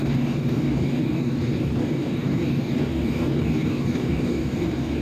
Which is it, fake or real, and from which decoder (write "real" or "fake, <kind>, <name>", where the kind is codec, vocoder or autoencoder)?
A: fake, codec, DAC